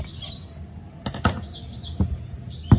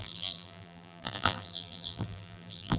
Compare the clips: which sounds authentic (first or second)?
first